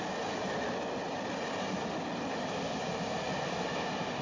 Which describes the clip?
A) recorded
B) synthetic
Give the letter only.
A